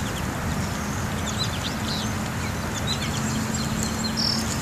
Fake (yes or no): no